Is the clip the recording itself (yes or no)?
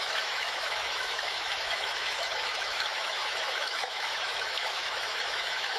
no